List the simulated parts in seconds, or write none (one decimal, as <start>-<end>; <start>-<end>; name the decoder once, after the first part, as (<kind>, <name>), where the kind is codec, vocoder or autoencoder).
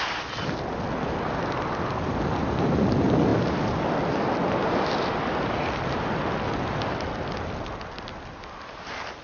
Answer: none